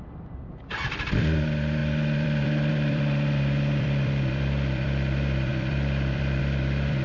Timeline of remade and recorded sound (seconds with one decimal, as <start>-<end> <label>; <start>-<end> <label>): 0.0-7.0 remade